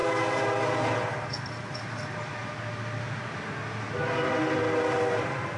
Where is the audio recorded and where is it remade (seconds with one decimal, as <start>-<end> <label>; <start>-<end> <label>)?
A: 0.0-5.6 recorded